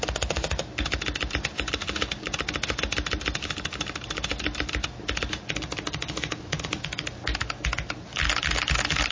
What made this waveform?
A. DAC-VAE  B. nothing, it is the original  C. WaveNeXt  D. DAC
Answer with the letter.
B